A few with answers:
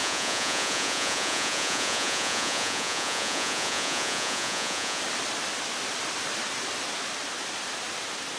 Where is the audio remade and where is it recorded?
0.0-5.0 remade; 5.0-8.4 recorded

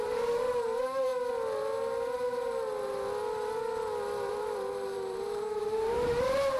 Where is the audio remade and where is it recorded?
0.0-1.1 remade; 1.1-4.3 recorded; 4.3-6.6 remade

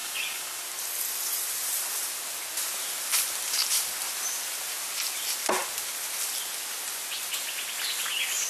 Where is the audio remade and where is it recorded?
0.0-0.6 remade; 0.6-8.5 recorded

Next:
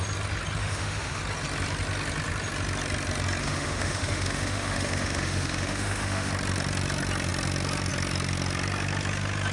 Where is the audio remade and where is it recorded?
0.0-0.6 recorded; 0.6-1.2 remade; 1.2-3.4 recorded; 3.4-6.3 remade; 6.3-9.5 recorded

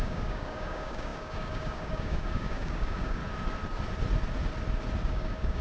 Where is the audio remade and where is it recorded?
0.0-3.2 remade; 3.2-5.1 recorded; 5.1-5.6 remade